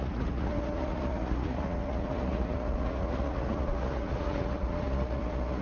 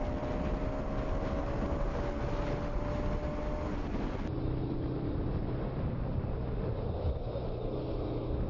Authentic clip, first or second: second